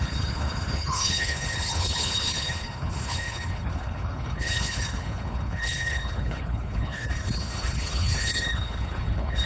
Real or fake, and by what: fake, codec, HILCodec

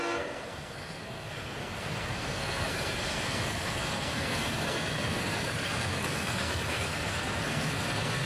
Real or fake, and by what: fake, codec, SNAC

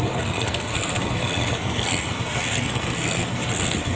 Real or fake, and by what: fake, codec, SNAC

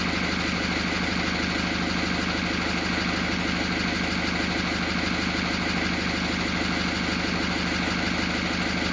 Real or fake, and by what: real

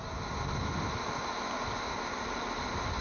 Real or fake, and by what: real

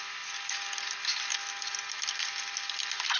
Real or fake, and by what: real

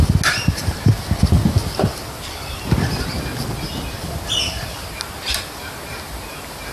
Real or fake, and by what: real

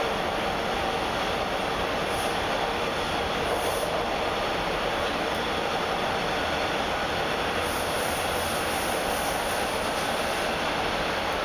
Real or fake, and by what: real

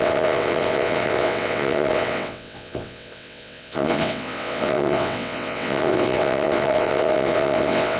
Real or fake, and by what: fake, vocoder, WaveNeXt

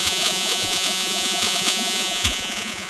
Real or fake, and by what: fake, vocoder, Vocos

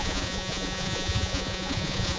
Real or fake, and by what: fake, vocoder, Vocos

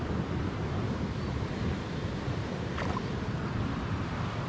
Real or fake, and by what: fake, vocoder, BigVGAN v2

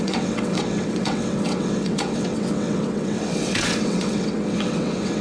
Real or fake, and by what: fake, vocoder, WaveNeXt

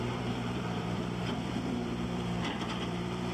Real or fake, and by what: fake, vocoder, BigVGAN v2